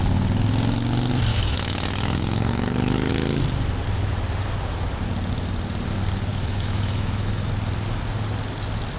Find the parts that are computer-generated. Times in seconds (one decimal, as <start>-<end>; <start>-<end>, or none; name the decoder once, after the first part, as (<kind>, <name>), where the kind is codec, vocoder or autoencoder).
1.3-3.1 (autoencoder, DAC-VAE); 6.3-7.5